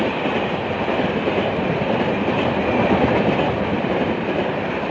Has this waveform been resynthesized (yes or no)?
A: yes